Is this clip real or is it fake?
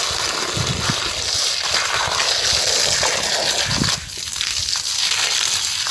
real